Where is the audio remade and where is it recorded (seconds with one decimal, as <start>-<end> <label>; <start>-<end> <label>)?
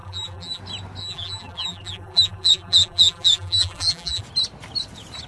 0.0-0.6 remade; 0.6-1.0 recorded; 1.0-4.2 remade; 4.2-5.3 recorded